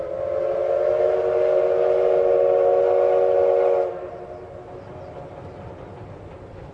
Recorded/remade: recorded